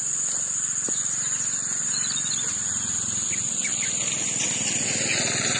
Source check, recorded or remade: recorded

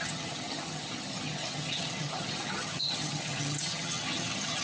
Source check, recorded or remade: remade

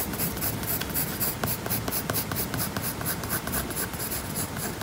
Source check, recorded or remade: recorded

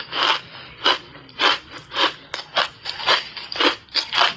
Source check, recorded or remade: recorded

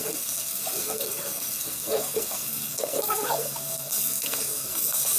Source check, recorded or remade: remade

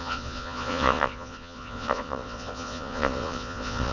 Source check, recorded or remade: remade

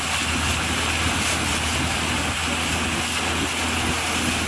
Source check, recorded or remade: recorded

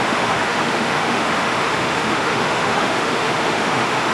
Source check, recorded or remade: remade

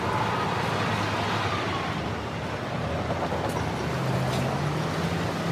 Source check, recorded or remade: recorded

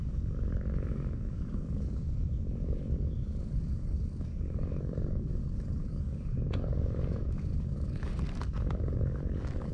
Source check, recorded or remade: remade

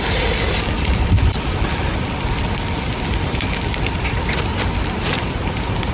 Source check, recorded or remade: recorded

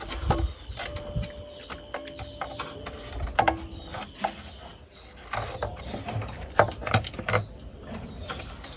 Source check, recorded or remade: recorded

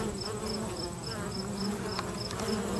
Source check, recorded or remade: recorded